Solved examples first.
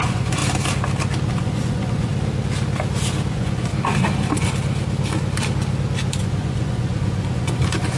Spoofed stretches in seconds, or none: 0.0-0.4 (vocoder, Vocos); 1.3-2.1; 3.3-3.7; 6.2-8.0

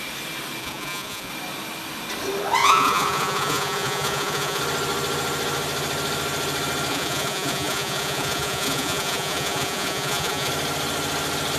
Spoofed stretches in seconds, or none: 0.6-1.3 (vocoder, Vocos); 2.6-4.6; 6.9-10.5

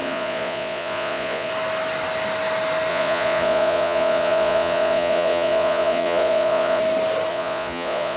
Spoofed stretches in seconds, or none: 0.0-1.5 (vocoder, Vocos); 2.9-6.8; 7.3-8.2

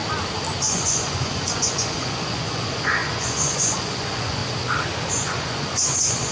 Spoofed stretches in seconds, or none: 0.6-4.4 (vocoder, Vocos); 5.1-6.3

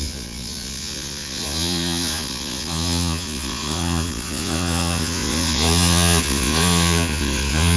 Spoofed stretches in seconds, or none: 0.0-7.8 (vocoder, Vocos)

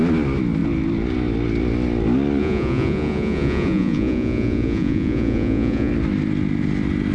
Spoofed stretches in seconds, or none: 2.4-5.9 (vocoder, Vocos)